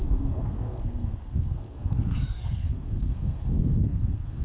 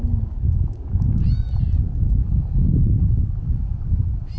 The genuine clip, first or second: second